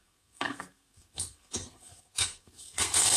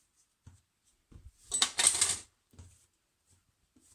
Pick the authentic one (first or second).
second